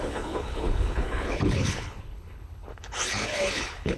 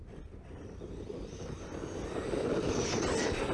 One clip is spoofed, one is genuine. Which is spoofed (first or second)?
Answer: first